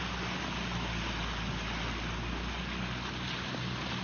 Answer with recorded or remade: recorded